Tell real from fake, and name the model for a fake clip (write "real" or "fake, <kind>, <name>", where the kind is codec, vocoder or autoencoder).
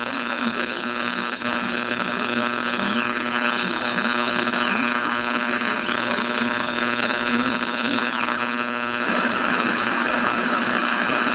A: fake, codec, HILCodec